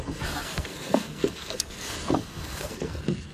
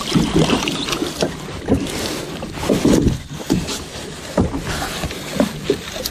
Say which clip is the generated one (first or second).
first